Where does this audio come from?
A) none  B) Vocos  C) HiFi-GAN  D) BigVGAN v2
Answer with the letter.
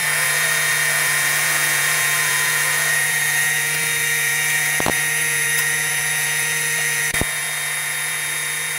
B